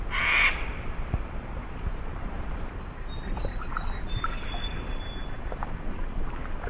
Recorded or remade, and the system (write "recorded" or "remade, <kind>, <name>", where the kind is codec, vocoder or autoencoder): recorded